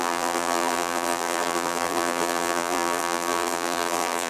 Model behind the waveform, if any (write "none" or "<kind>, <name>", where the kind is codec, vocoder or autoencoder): vocoder, BigVGAN v2